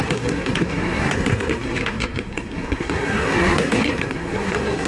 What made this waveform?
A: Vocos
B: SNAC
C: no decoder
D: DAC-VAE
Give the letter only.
B